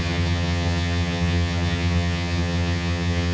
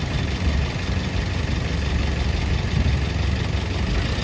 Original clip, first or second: second